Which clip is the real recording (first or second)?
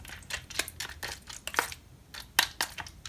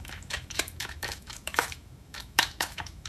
first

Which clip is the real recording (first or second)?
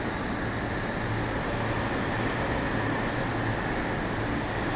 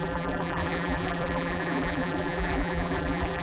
first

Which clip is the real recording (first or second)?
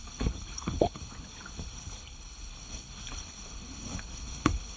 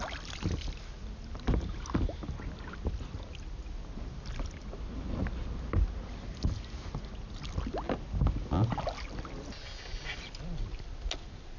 second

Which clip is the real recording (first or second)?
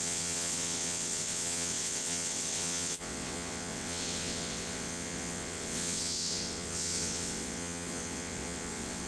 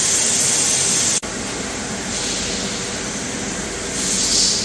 second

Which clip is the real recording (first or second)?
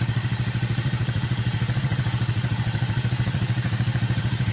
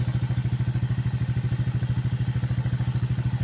second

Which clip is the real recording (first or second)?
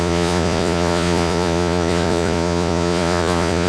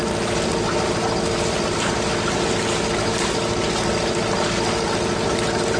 second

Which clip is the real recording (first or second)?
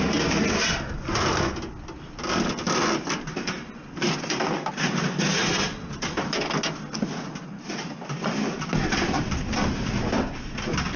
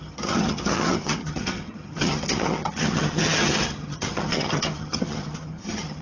first